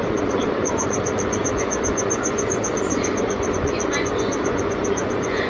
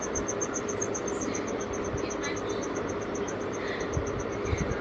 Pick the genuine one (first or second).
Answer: second